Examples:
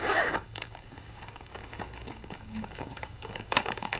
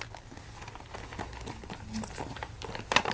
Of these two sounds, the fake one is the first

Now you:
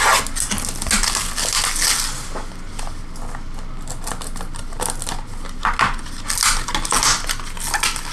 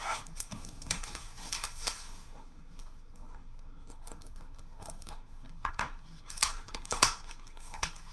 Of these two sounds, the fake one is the second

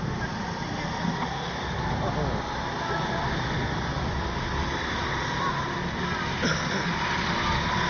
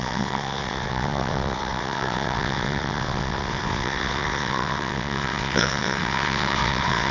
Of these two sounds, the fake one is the second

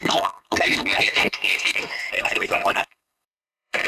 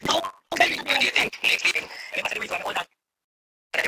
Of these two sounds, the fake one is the first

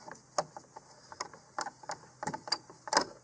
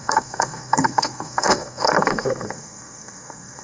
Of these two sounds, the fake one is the second